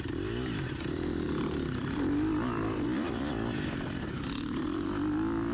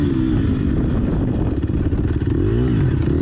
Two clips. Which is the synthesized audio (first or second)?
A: first